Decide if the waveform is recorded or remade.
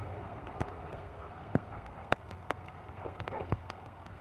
remade